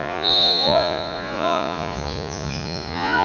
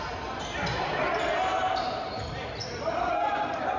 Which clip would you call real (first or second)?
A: second